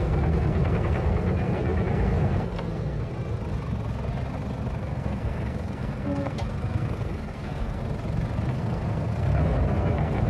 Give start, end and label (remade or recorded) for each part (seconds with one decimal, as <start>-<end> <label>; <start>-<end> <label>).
0.0-3.1 remade; 3.1-4.8 recorded; 4.8-7.8 remade; 7.8-8.5 recorded; 8.5-10.3 remade